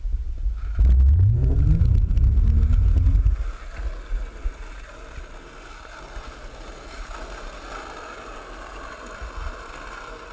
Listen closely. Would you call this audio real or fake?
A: real